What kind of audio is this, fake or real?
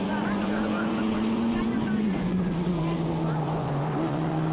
fake